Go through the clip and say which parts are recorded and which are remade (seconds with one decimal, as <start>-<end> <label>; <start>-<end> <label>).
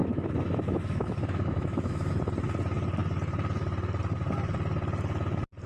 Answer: 0.0-2.1 remade; 2.1-5.7 recorded